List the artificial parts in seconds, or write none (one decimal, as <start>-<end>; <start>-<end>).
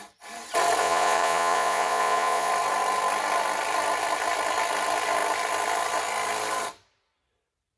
0.8-2.5